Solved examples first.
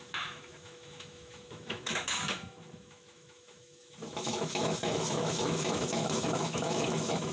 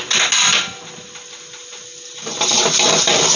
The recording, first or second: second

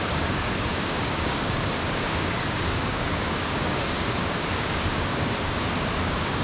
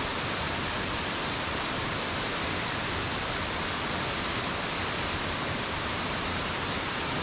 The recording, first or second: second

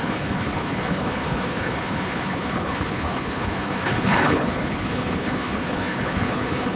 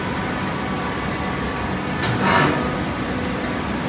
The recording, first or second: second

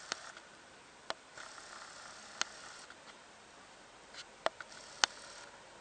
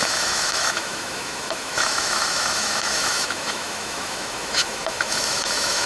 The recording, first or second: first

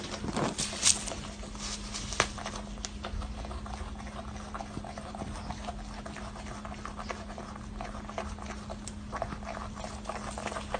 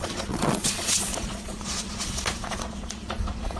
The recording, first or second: first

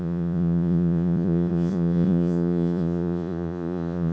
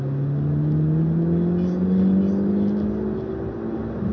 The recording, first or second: second